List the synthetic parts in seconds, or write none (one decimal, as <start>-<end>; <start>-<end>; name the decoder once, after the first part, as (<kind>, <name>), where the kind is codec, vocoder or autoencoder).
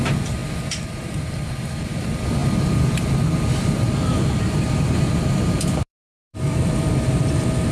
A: 0.0-7.7 (vocoder, BigVGAN v2)